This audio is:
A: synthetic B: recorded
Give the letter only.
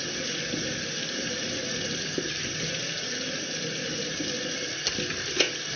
B